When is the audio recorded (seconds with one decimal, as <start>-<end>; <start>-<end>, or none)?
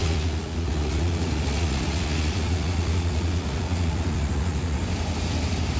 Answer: 4.8-5.8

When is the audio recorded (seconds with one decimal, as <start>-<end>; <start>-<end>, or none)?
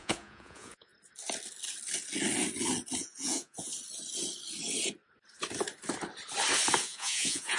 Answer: 0.9-3.0; 3.7-6.8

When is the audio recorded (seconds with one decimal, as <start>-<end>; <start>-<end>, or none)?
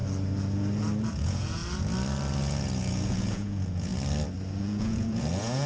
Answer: 0.0-1.1; 1.6-2.4; 3.9-4.6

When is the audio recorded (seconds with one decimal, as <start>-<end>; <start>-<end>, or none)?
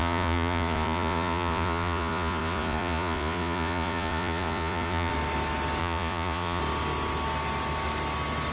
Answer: 5.1-5.8; 6.6-8.5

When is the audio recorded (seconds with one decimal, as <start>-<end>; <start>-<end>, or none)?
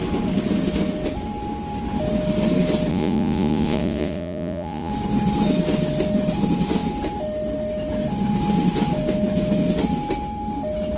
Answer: 0.0-2.9; 4.9-11.0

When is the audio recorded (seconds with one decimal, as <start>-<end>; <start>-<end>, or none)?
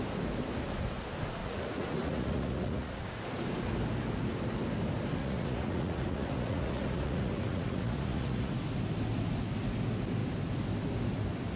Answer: 0.0-1.4; 3.2-5.2; 8.5-11.6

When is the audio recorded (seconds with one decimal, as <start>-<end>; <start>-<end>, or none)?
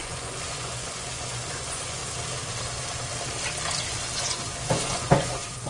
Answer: 2.0-3.8